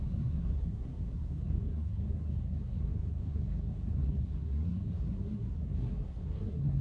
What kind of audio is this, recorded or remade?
remade